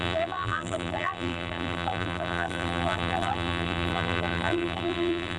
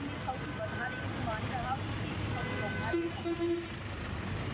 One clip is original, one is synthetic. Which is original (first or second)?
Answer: second